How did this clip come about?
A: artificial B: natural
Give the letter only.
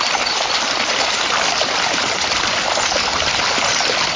B